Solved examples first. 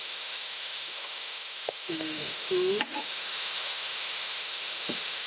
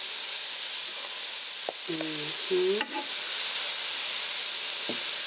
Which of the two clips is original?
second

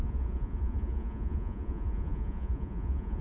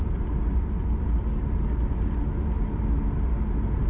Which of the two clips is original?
second